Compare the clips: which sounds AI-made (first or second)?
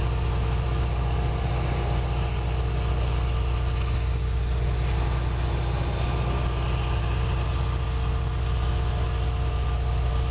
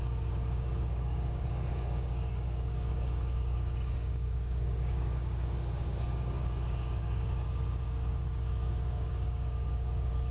second